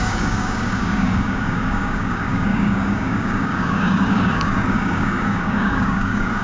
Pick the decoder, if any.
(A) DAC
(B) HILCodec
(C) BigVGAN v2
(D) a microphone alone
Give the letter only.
A